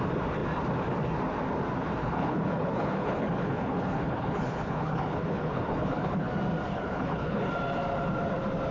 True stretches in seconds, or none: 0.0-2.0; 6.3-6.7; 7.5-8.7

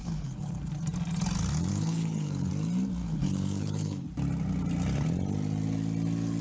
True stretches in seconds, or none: 0.6-1.7; 2.5-3.0; 4.1-6.4

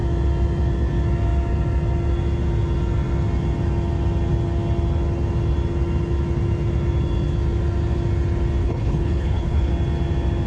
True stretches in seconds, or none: 0.0-8.6; 9.7-10.5

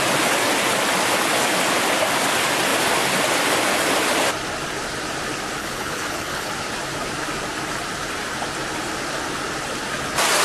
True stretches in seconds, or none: 0.0-5.6; 6.5-10.4

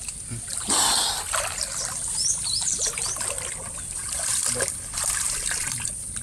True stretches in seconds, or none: 0.0-6.2